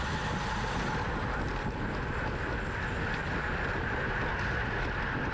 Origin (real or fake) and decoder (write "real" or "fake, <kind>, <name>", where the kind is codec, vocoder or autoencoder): real